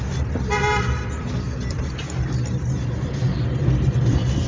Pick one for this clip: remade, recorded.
recorded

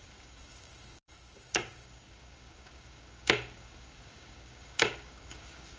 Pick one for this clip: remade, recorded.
remade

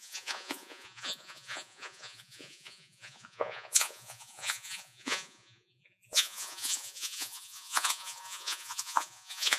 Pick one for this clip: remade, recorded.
remade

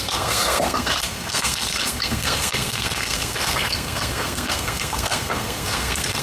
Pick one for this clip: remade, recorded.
remade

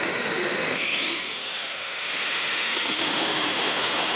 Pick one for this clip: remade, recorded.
remade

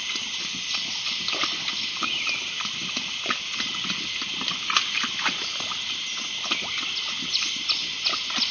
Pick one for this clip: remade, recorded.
recorded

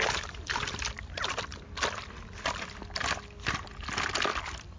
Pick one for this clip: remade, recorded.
recorded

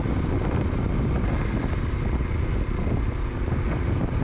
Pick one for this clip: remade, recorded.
recorded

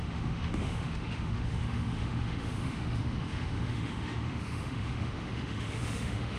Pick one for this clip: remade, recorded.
remade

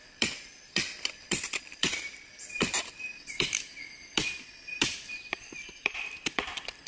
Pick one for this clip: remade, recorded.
remade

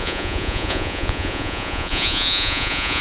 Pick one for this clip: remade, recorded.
remade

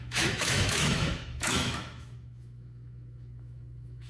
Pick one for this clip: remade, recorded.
remade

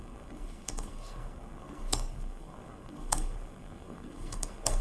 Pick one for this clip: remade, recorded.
remade